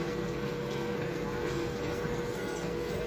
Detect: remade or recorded remade